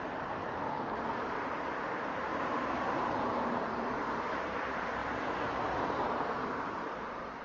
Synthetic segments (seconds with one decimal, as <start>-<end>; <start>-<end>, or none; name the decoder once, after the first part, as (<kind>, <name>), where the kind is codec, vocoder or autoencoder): 0.0-0.4 (vocoder, BigVGAN v2); 1.2-5.0; 5.8-7.4